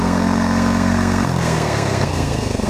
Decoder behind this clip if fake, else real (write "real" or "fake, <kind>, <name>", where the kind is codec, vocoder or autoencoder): fake, codec, SNAC